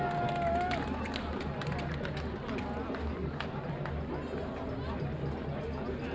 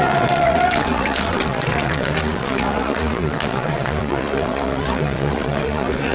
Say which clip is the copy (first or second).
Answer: second